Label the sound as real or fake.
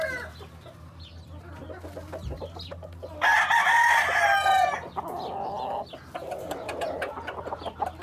real